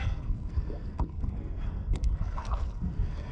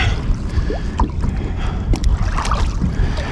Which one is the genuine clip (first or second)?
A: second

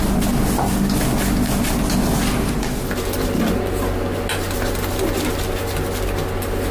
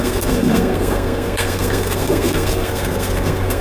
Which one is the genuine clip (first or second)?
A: first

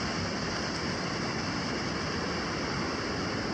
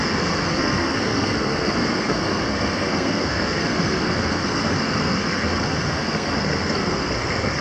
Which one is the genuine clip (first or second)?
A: first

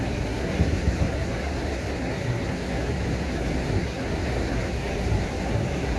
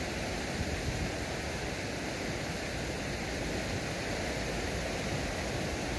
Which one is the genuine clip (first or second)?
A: second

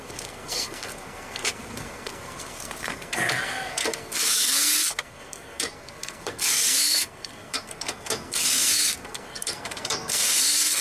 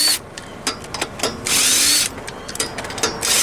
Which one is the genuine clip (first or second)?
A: second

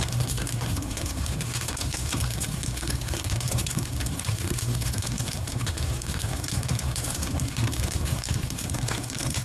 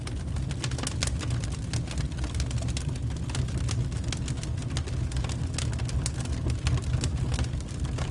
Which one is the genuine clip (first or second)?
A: second